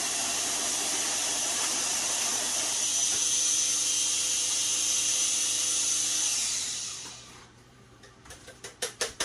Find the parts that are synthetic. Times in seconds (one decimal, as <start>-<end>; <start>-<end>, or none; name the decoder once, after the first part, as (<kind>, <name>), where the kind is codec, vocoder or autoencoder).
1.2-2.8 (vocoder, BigVGAN v2); 4.7-5.4; 6.3-9.2